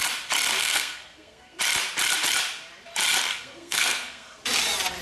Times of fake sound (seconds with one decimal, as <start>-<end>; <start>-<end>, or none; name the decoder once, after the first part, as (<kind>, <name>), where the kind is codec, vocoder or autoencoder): 0.6-1.6 (codec, SNAC); 3.3-4.4